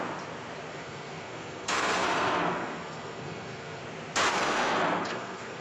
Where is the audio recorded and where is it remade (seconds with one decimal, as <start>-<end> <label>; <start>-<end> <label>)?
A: 0.0-0.7 recorded; 0.7-3.8 remade; 3.8-4.3 recorded; 4.3-5.6 remade